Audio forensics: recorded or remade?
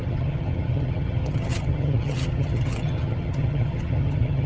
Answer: remade